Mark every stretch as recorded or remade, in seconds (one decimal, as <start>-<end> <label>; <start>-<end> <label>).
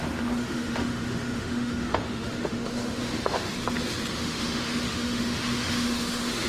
0.0-3.5 remade; 3.5-4.1 recorded; 4.1-6.5 remade